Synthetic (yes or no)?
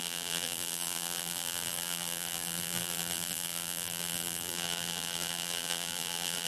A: yes